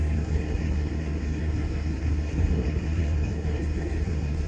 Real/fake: fake